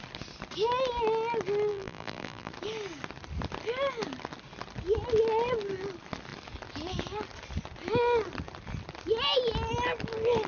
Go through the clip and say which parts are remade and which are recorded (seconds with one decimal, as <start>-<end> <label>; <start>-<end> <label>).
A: 0.0-1.7 recorded; 1.7-2.5 remade; 2.5-10.5 recorded